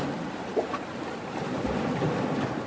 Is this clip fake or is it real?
real